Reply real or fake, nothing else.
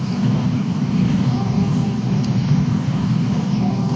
fake